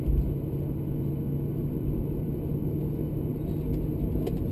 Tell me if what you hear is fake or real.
real